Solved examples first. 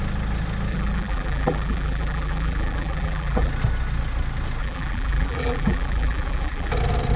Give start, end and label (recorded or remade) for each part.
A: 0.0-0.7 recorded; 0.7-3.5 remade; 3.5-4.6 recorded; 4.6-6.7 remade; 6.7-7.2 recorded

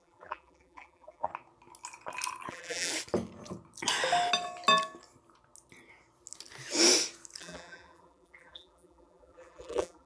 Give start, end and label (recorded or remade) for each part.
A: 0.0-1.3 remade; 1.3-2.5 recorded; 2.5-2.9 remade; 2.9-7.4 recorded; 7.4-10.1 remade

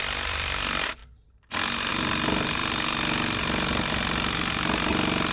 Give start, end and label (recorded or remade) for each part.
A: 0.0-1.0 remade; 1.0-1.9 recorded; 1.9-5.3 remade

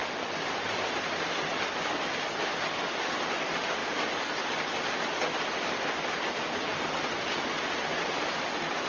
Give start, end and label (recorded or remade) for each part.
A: 0.0-1.5 recorded; 1.5-3.8 remade; 3.8-5.5 recorded; 5.5-6.7 remade; 6.7-7.6 recorded; 7.6-8.9 remade

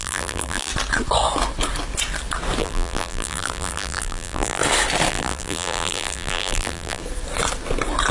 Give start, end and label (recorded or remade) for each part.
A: 0.0-0.7 remade; 0.7-2.6 recorded; 2.6-4.6 remade; 4.6-5.1 recorded; 5.1-7.0 remade; 7.0-8.1 recorded

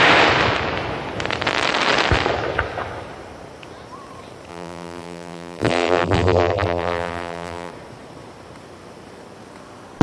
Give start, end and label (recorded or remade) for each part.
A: 0.0-4.5 recorded; 4.5-7.7 remade; 7.7-10.0 recorded

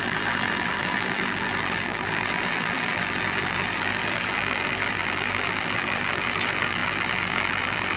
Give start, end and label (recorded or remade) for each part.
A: 0.0-8.0 remade